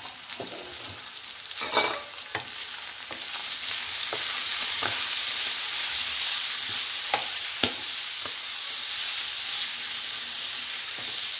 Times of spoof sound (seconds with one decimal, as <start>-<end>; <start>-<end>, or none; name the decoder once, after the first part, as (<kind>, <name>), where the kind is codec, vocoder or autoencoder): 0.7-2.2 (vocoder, BigVGAN v2); 3.4-8.1